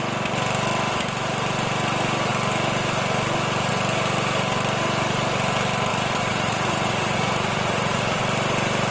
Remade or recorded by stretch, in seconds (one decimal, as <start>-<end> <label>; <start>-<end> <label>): 0.0-5.9 recorded; 5.9-8.2 remade; 8.2-8.9 recorded